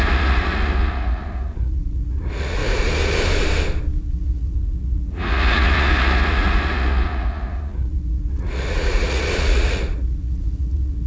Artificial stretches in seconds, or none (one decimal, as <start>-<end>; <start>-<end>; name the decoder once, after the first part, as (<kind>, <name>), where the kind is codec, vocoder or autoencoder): 0.0-2.6 (vocoder, Vocos); 4.0-11.1